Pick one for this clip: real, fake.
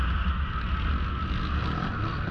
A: real